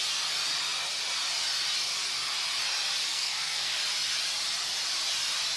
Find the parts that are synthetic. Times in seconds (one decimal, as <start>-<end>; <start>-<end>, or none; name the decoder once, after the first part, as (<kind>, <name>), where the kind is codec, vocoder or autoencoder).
3.1-3.8 (codec, SNAC)